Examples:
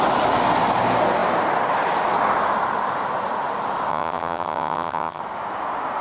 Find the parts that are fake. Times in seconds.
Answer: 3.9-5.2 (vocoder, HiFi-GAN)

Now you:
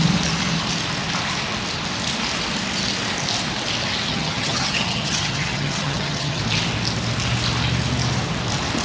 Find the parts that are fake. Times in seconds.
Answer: 4.1-6.4 (vocoder, HiFi-GAN)